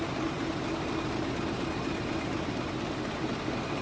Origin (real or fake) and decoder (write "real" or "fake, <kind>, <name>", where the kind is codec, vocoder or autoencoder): fake, vocoder, BigVGAN v2